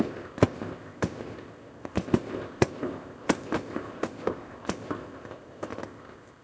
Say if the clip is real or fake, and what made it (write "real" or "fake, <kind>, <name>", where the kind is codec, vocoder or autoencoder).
fake, codec, ZipCodec